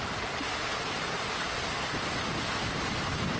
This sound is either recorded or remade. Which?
recorded